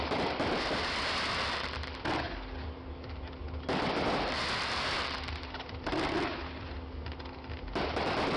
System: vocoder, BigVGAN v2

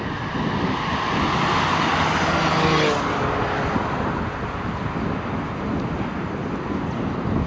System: none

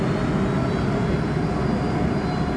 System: none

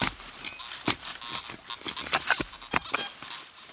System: none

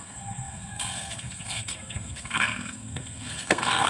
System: codec, SNAC